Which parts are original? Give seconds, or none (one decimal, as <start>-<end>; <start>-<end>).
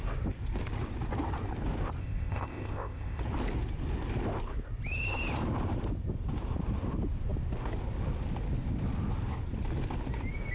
0.0-2.0; 3.2-10.5